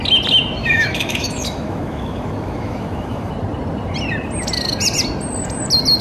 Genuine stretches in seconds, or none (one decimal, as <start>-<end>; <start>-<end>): 0.0-0.6; 3.3-6.0